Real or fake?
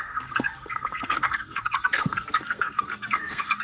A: fake